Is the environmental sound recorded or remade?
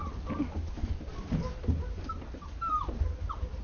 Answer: recorded